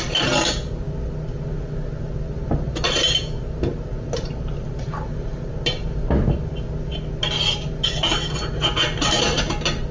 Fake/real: real